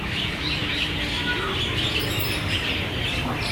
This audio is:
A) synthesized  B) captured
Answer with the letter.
B